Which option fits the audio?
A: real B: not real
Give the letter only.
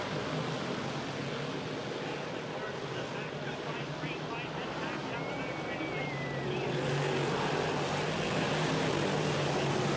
A